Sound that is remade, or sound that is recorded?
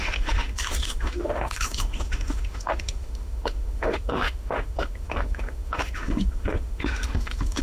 remade